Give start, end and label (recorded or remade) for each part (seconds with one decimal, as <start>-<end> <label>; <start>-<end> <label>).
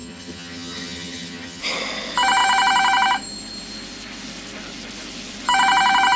0.0-1.6 remade; 1.6-6.2 recorded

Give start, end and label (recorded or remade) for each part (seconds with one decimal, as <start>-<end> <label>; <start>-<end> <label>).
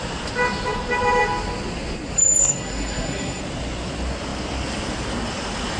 0.0-2.4 recorded; 2.4-3.4 remade; 3.4-5.8 recorded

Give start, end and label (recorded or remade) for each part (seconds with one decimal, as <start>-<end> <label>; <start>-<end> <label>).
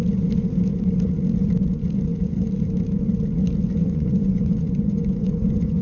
0.0-3.8 recorded; 3.8-5.8 remade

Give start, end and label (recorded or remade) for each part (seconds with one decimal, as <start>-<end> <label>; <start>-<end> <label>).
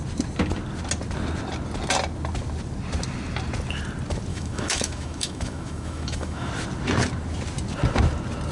0.0-4.3 recorded; 4.3-6.5 remade; 6.5-8.5 recorded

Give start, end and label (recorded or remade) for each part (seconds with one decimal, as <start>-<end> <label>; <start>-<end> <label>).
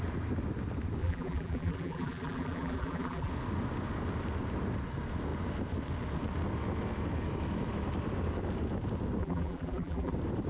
0.0-1.0 recorded; 1.0-3.3 remade; 3.3-9.2 recorded; 9.2-10.1 remade; 10.1-10.5 recorded